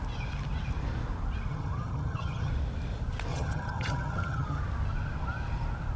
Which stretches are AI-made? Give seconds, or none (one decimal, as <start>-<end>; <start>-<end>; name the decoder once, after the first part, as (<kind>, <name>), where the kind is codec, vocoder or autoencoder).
1.5-2.5 (vocoder, HiFi-GAN); 3.3-4.6

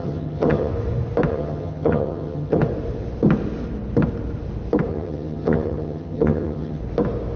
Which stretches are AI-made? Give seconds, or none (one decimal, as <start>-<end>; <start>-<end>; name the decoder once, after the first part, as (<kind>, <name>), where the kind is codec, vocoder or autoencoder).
0.0-0.7 (vocoder, HiFi-GAN); 1.3-2.6; 4.9-6.8